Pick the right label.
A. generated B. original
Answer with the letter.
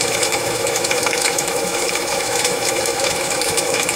A